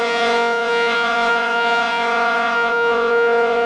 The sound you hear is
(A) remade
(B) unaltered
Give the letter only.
A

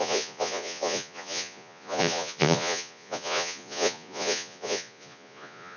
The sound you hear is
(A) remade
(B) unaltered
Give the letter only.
A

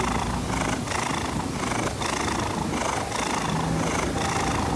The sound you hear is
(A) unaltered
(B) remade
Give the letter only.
A